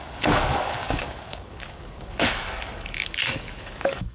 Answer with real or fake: fake